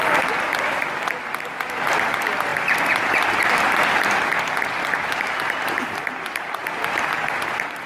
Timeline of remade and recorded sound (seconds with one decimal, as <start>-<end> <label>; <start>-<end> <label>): 0.0-7.9 recorded